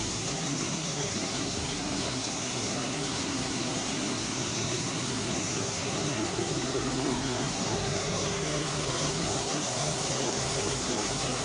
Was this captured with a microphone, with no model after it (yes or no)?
no